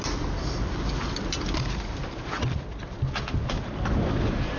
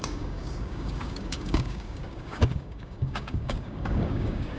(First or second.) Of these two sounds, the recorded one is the first